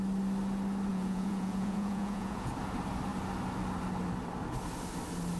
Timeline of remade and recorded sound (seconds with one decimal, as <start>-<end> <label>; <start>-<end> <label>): 0.0-0.9 recorded; 0.9-2.5 remade; 2.5-5.4 recorded